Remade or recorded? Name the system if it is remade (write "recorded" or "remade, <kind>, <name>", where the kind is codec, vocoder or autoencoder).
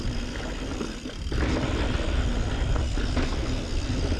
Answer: recorded